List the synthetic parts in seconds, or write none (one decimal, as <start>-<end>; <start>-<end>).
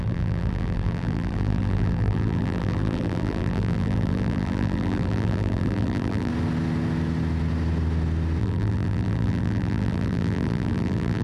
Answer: 0.0-6.3; 8.4-11.2